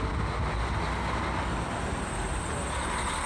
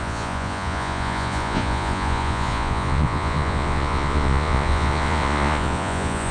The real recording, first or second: first